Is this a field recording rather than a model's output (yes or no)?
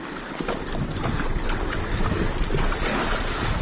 yes